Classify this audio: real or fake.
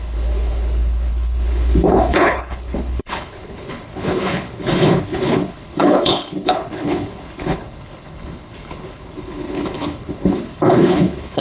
fake